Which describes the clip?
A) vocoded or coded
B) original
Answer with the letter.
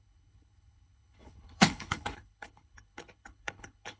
A